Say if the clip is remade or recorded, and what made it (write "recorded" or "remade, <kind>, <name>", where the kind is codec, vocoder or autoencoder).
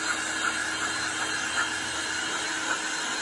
recorded